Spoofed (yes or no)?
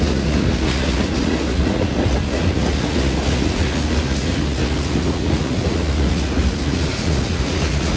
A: yes